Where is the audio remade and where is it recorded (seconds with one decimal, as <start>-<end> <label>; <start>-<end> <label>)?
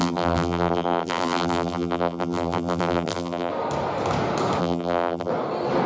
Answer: 0.0-3.5 remade; 3.5-4.6 recorded; 4.6-5.3 remade; 5.3-5.9 recorded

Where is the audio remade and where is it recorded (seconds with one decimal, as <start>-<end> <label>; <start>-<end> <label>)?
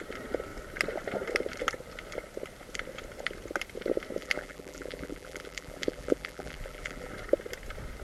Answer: 0.0-4.2 recorded; 4.2-7.1 remade; 7.1-8.0 recorded